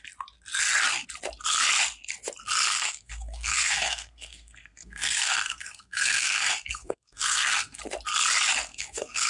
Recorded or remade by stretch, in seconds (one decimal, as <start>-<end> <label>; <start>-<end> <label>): 0.0-2.7 recorded; 2.7-7.8 remade; 7.8-8.7 recorded; 8.7-9.3 remade